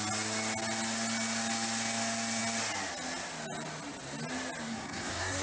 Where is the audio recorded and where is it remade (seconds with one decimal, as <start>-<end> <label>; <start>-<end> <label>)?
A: 0.0-4.7 recorded; 4.7-5.4 remade